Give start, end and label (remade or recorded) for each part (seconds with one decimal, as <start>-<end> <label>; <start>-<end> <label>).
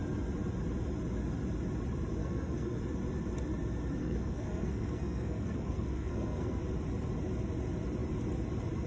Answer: 0.0-2.2 recorded; 2.2-2.8 remade; 2.8-4.0 recorded; 4.0-6.6 remade; 6.6-8.9 recorded